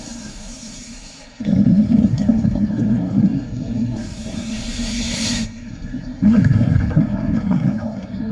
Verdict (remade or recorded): remade